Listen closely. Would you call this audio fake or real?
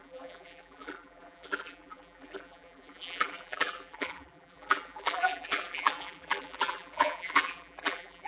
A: fake